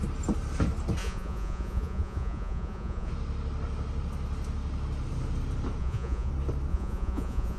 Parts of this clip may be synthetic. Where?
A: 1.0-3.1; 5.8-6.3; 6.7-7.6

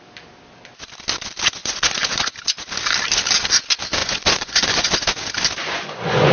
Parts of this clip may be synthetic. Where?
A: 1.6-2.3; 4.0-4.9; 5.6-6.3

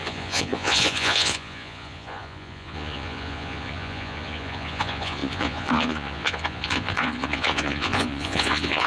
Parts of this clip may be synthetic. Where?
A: 0.0-8.9

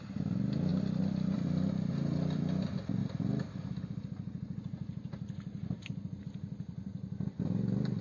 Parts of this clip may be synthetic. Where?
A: 0.0-3.0; 6.2-8.0

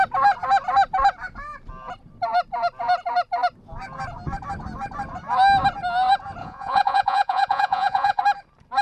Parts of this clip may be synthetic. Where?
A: 6.4-8.2